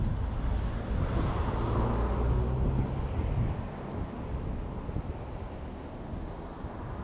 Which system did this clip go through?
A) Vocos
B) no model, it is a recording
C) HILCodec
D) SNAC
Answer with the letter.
B